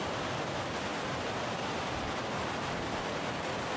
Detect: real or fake real